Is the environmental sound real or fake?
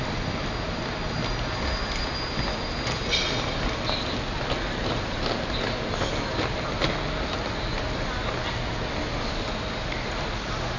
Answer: real